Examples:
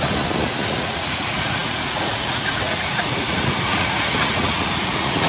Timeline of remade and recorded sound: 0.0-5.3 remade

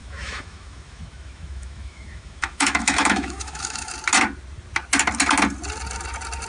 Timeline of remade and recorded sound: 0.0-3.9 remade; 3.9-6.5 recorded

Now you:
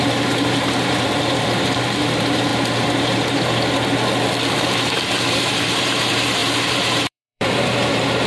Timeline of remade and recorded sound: 0.0-2.5 remade; 2.5-5.3 recorded; 5.3-8.3 remade